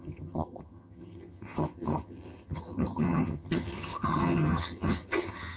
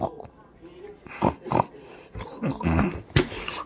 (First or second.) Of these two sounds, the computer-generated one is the first